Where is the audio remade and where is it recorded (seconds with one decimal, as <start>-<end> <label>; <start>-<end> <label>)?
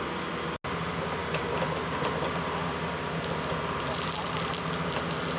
0.0-5.4 recorded